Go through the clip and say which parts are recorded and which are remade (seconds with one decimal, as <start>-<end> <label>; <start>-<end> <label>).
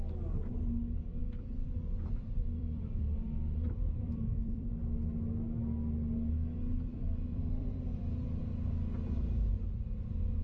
0.0-1.2 recorded; 1.2-4.7 remade; 4.7-6.9 recorded; 6.9-8.4 remade; 8.4-10.4 recorded